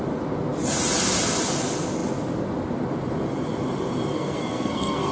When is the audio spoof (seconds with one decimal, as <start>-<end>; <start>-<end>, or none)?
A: 4.1-5.1